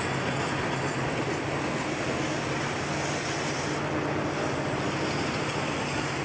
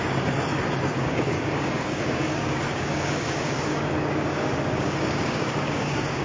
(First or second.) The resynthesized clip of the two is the second